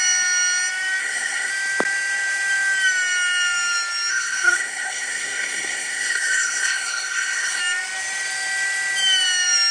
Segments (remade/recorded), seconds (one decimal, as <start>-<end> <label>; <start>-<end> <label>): 0.0-1.0 recorded; 1.0-1.5 remade; 1.5-4.1 recorded; 4.1-7.6 remade; 7.6-9.7 recorded